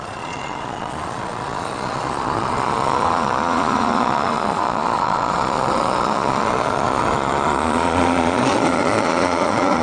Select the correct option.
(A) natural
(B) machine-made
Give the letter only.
B